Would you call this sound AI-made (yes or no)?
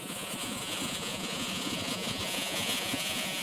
yes